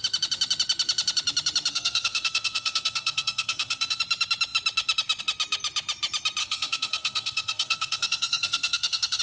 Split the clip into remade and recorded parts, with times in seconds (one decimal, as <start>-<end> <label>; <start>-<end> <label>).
0.0-1.7 recorded; 1.7-4.0 remade; 4.0-6.4 recorded; 6.4-9.2 remade